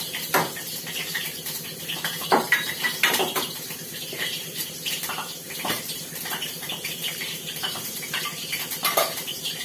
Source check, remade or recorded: remade